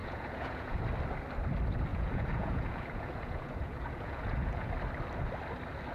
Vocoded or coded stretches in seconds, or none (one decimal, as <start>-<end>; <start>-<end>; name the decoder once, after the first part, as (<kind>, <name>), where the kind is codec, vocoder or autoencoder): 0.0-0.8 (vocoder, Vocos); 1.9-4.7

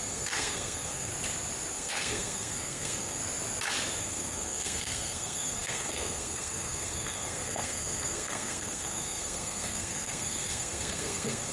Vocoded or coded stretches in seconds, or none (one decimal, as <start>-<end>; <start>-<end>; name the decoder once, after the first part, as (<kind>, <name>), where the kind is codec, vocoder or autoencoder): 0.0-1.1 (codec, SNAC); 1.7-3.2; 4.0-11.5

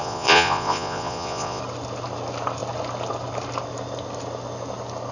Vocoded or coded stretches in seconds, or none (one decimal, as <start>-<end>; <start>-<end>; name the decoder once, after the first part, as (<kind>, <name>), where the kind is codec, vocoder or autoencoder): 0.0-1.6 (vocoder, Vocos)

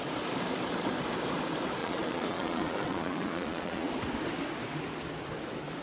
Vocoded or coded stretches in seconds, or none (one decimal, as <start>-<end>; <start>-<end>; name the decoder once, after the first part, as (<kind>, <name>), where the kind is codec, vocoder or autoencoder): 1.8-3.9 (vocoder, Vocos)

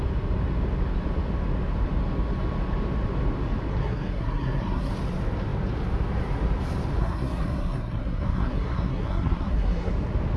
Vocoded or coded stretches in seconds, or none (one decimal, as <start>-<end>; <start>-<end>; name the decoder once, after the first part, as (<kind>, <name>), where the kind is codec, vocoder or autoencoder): 3.7-4.9 (codec, SNAC); 7.0-9.9

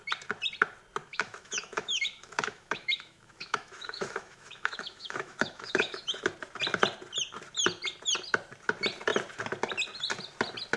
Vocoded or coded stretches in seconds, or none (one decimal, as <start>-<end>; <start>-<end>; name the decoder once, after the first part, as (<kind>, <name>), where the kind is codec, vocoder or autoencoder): 1.1-6.3 (autoencoder, DAC-VAE)

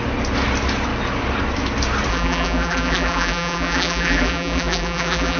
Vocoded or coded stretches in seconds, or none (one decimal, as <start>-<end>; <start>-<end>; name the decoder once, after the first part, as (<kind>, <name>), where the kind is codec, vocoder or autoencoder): 2.1-5.4 (vocoder, BigVGAN v2)